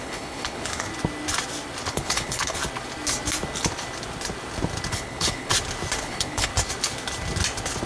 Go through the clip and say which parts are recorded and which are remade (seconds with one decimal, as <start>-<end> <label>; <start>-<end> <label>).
0.0-0.9 remade; 0.9-1.9 recorded; 1.9-2.6 remade; 2.6-4.9 recorded; 4.9-5.5 remade; 5.5-6.0 recorded; 6.0-6.5 remade; 6.5-7.9 recorded